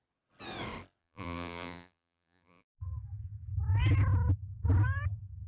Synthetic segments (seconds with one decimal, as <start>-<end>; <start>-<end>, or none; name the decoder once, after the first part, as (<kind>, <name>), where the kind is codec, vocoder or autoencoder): 1.0-2.8 (vocoder, BigVGAN v2)